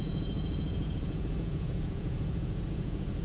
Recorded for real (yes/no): no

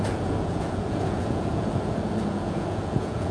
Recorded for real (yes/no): no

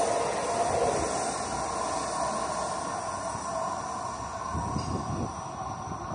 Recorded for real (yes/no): yes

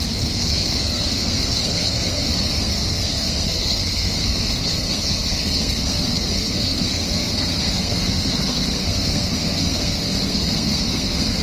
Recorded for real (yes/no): no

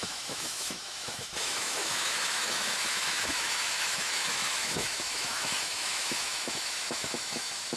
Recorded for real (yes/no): no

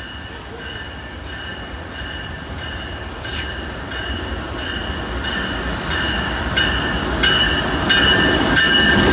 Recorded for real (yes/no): yes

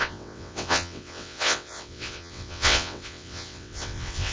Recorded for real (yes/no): no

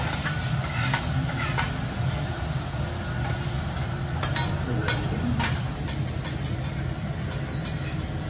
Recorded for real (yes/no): yes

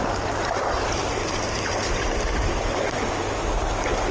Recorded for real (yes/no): yes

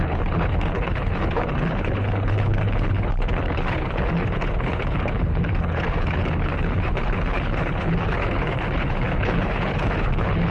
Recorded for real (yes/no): no